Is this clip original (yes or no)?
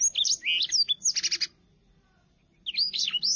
yes